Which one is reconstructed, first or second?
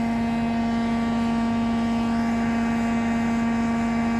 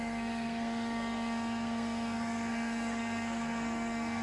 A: second